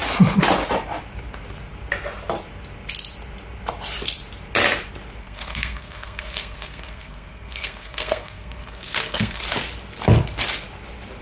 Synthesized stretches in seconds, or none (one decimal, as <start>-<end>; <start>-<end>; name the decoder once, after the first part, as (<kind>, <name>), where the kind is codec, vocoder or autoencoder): 5.2-9.4 (codec, SNAC)